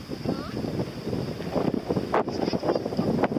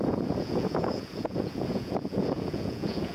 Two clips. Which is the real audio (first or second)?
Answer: first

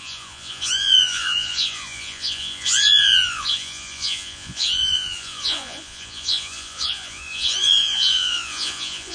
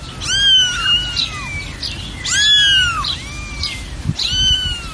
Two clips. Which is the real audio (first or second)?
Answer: second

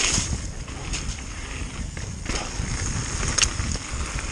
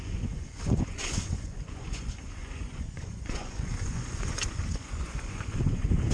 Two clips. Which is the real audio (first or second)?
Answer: first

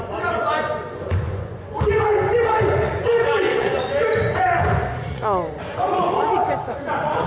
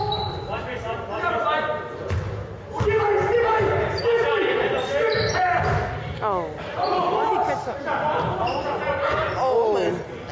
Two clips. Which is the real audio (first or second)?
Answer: second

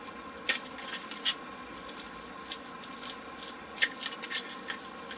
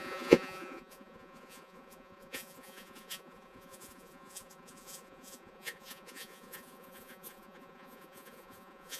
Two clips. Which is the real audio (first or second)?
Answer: first